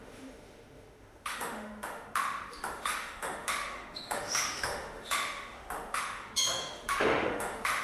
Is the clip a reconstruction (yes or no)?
yes